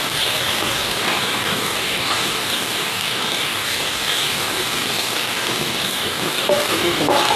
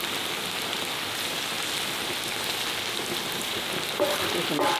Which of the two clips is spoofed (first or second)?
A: first